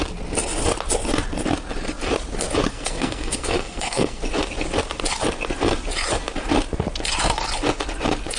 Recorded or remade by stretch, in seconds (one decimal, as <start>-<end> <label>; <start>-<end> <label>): 0.0-2.7 recorded; 2.7-4.2 remade; 4.2-8.4 recorded